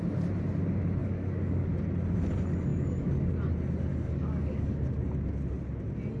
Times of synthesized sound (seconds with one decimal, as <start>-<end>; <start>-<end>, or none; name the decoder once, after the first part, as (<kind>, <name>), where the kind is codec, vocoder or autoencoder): 1.0-1.7 (codec, DAC); 2.7-3.3; 3.9-4.9